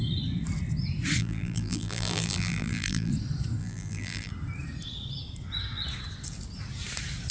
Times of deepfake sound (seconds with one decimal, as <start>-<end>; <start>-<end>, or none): 1.2-3.1; 3.6-4.3